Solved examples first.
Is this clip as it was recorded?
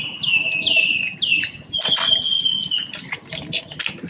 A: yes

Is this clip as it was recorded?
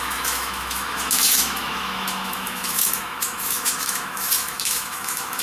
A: no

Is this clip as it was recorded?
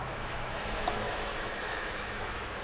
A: no